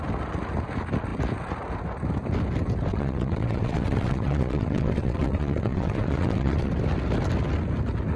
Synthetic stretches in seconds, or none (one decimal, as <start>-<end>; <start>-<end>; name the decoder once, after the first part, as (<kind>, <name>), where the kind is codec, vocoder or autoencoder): 2.9-6.7 (vocoder, WaveNeXt)